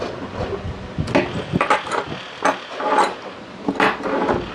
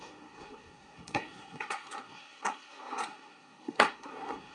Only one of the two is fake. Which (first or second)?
second